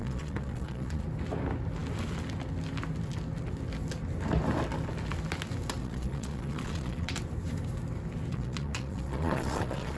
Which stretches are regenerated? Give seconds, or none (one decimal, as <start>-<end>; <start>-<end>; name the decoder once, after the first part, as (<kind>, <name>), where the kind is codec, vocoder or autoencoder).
0.0-1.0 (vocoder, Vocos); 5.8-7.1; 8.3-10.0